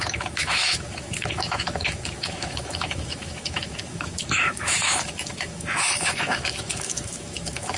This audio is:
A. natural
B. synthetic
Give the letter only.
B